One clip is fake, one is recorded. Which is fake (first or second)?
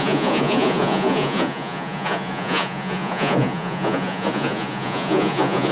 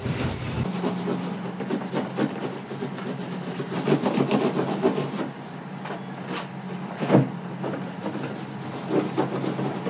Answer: first